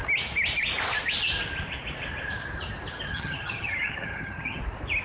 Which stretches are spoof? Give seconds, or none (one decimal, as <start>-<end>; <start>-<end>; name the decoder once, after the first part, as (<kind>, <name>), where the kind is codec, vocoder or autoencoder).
3.1-4.6 (vocoder, HiFi-GAN)